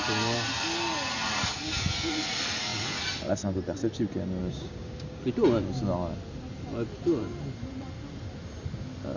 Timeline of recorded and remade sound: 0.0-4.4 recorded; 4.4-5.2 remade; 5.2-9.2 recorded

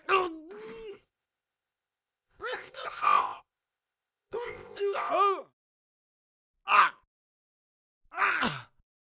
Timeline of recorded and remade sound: 0.0-0.9 recorded; 0.9-5.1 remade; 5.1-9.1 recorded

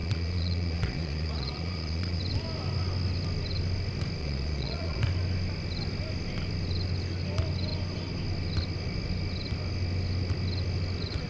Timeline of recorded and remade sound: 0.0-2.2 remade; 2.2-4.2 recorded; 4.2-5.0 remade; 5.0-11.3 recorded

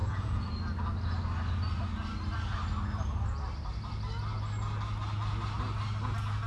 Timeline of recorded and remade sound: 0.0-0.5 remade; 0.5-6.5 recorded

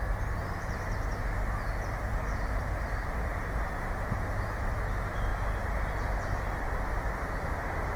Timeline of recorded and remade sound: 0.0-0.4 recorded; 0.4-1.1 remade; 1.1-2.1 recorded; 2.1-3.8 remade; 3.8-8.0 recorded

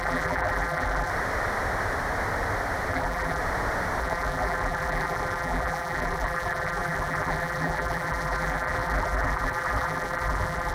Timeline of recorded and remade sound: 0.0-1.1 remade; 1.1-2.9 recorded; 2.9-3.4 remade; 3.4-4.0 recorded; 4.0-10.7 remade

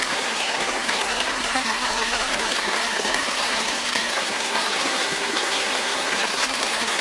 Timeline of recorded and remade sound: 0.0-7.0 remade